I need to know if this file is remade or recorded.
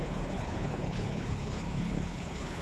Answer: remade